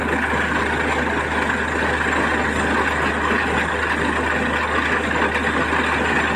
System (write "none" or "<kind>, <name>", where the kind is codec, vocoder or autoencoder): none